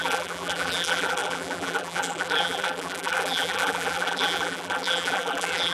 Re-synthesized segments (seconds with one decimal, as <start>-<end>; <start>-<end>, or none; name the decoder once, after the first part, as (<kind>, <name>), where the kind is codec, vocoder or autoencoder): 0.0-5.7 (vocoder, BigVGAN v2)